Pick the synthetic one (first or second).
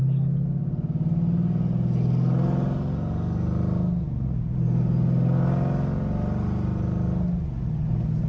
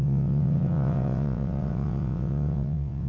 second